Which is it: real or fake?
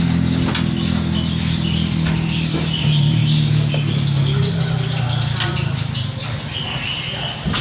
real